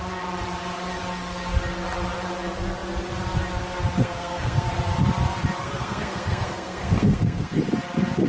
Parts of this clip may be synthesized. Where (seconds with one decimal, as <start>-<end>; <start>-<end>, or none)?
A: 4.0-4.7; 5.6-7.6